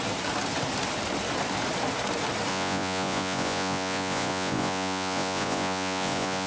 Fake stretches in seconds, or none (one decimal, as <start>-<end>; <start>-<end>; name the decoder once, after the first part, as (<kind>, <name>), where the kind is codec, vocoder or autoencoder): 2.5-6.5 (vocoder, Vocos)